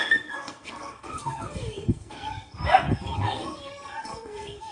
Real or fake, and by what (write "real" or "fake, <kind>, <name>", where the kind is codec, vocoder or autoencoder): fake, codec, SNAC